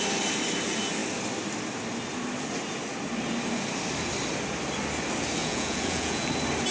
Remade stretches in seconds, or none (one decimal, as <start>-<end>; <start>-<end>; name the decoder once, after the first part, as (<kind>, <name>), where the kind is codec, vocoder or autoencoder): 5.4-6.3 (vocoder, Vocos)